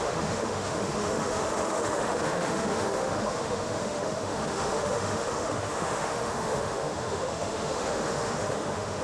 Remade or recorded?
remade